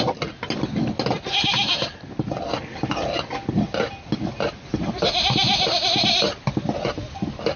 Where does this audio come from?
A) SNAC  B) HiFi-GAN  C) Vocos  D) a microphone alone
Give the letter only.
D